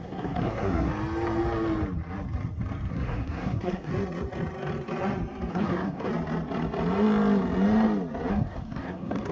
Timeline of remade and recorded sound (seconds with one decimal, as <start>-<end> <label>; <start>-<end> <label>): 0.0-0.9 remade; 0.9-2.9 recorded; 2.9-3.9 remade; 3.9-5.5 recorded; 5.5-6.1 remade; 6.1-8.3 recorded; 8.3-9.3 remade